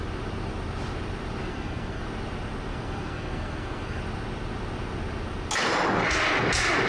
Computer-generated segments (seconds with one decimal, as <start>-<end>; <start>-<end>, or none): 1.4-2.0; 2.7-4.0